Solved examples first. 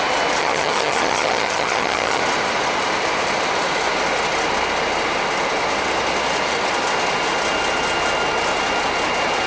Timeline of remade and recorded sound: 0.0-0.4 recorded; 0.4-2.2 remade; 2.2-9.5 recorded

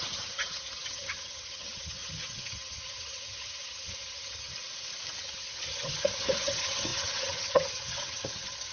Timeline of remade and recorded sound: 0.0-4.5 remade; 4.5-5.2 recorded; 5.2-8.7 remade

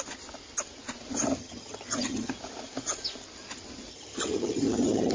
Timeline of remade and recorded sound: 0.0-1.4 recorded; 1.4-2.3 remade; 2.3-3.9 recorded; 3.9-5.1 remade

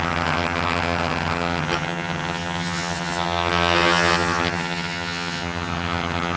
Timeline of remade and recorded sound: 0.0-6.4 remade

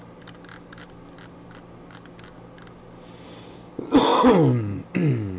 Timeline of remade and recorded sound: 0.0-5.4 recorded

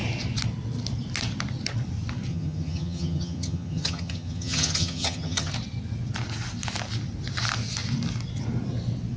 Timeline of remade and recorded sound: 0.0-2.3 recorded; 2.3-5.5 remade; 5.5-9.2 recorded